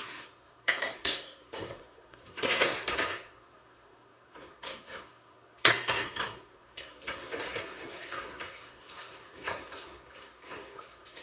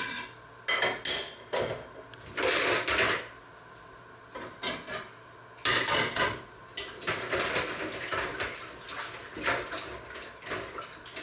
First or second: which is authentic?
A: second